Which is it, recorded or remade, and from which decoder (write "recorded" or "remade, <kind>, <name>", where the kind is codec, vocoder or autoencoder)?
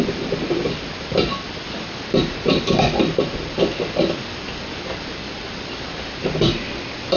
recorded